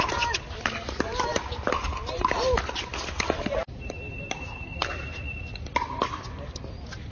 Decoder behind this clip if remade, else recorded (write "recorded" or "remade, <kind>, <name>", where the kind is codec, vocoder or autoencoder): recorded